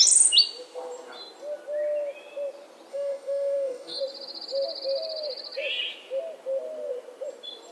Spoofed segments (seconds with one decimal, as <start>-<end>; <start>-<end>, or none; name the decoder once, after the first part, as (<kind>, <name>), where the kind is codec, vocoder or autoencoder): 2.9-4.0 (codec, DAC)